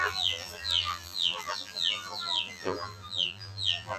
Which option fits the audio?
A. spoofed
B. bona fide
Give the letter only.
A